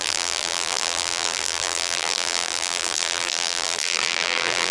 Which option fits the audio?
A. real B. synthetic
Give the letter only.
B